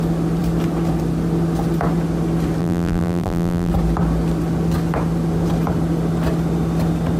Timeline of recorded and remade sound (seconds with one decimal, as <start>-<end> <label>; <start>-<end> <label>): 0.0-2.6 recorded; 2.6-3.7 remade; 3.7-7.2 recorded